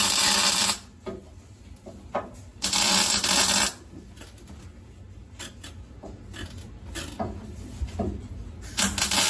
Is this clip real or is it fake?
real